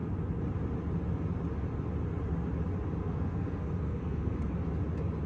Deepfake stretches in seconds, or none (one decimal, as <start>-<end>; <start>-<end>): 3.0-4.5